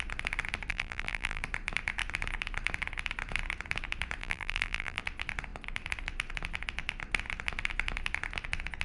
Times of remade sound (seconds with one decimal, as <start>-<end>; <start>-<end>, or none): 0.7-1.4; 4.2-5.0